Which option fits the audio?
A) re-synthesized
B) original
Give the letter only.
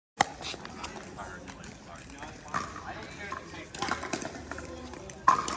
B